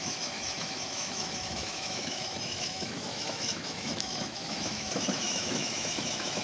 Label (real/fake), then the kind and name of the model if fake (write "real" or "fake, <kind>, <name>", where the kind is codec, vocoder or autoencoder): fake, autoencoder, DAC-VAE